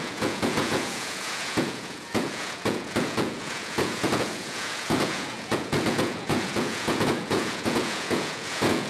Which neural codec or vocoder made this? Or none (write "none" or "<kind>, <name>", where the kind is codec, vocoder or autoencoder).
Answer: vocoder, Vocos